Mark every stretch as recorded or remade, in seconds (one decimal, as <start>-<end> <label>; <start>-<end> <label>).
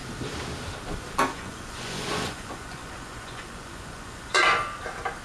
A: 0.0-1.3 recorded; 1.3-4.4 remade; 4.4-5.2 recorded